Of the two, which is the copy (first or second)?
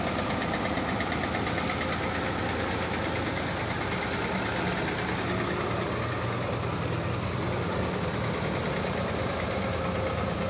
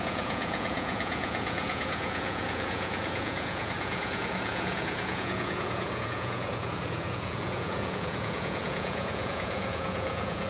second